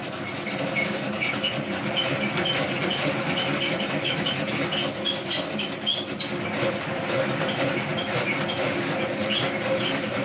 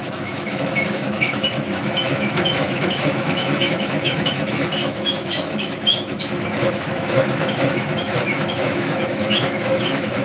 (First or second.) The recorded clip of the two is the first